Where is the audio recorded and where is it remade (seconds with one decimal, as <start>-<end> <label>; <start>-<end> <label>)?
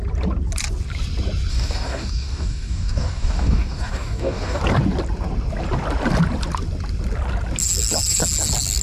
0.0-1.5 recorded; 1.5-4.6 remade; 4.6-8.8 recorded